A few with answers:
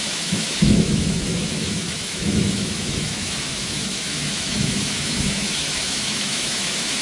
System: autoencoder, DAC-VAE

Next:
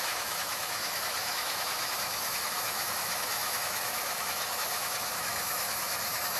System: autoencoder, DAC-VAE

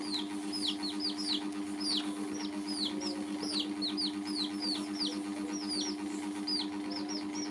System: none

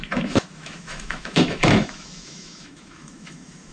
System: autoencoder, DAC-VAE